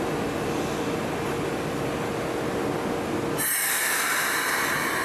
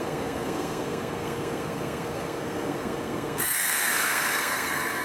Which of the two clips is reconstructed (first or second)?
second